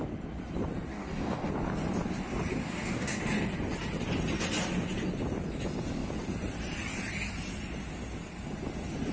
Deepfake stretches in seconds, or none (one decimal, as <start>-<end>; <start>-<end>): 0.9-1.5; 2.5-3.2